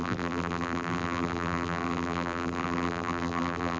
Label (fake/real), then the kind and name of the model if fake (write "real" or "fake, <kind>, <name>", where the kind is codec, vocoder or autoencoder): fake, vocoder, BigVGAN v2